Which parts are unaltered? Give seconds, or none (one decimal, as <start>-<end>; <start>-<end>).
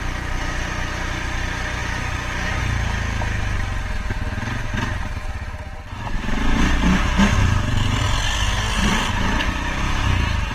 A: 0.0-10.5